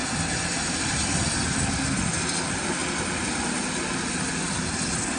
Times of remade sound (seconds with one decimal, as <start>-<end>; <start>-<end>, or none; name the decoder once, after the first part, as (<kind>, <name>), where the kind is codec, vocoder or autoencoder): 0.0-1.0 (vocoder, BigVGAN v2)